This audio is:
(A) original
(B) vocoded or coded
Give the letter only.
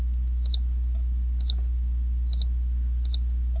A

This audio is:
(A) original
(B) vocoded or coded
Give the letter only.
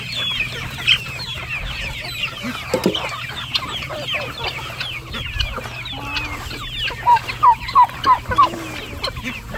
A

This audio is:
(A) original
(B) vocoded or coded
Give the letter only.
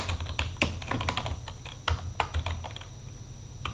A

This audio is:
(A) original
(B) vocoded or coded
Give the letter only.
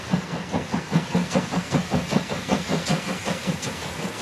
B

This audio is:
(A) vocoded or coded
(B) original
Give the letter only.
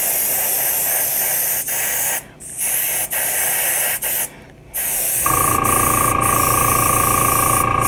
B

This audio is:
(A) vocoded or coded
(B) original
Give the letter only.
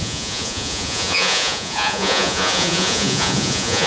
A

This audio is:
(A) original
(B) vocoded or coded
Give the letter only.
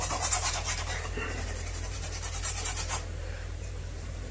B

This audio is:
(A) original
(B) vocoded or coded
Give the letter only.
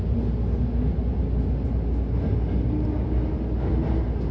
A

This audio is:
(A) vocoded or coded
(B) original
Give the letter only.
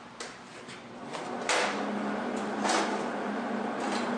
B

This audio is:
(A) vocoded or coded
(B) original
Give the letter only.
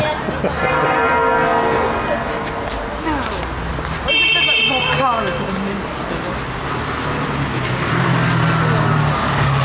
B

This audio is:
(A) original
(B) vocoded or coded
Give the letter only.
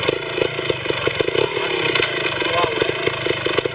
A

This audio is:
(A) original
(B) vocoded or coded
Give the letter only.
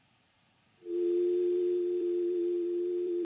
B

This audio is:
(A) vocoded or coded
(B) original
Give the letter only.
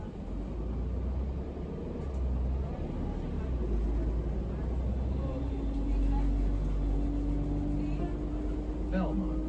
B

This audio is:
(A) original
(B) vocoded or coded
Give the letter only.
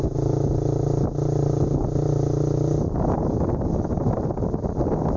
A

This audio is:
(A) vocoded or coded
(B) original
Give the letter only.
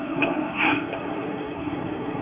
A